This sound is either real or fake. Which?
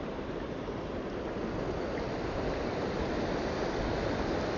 real